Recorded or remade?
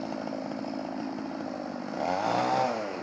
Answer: recorded